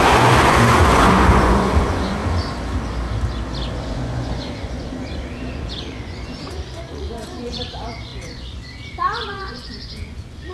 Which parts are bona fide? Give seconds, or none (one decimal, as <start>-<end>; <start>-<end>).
2.2-3.7